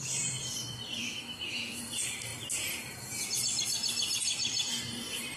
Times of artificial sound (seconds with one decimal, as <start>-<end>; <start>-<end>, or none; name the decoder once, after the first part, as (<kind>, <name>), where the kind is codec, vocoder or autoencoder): 1.0-1.8 (autoencoder, DAC-VAE)